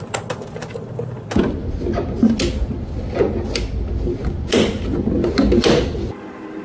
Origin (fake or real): real